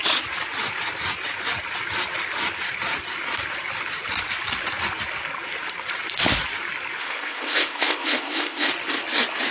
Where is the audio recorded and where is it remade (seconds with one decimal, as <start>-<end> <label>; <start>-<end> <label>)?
0.0-7.0 recorded; 7.0-8.7 remade; 8.7-9.5 recorded